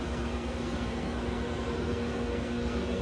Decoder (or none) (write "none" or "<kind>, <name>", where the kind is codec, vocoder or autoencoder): codec, SNAC